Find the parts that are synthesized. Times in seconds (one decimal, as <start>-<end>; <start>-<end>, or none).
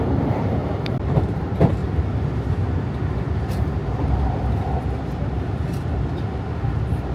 0.0-1.8; 3.4-3.8; 5.3-7.1